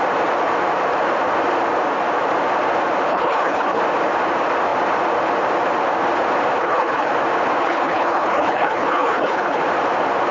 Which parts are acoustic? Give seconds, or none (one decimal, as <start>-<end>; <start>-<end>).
0.0-3.1; 3.8-6.6; 7.1-7.6; 9.6-10.3